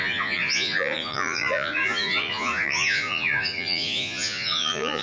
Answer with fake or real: fake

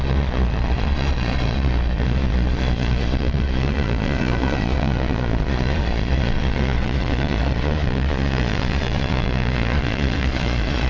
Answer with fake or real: fake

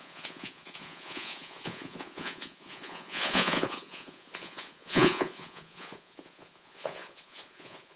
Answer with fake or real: fake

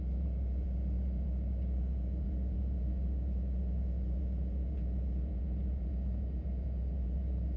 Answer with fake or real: fake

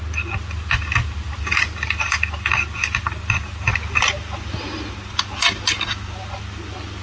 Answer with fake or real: real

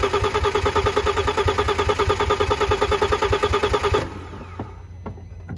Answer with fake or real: real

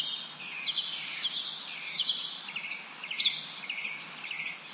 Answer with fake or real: real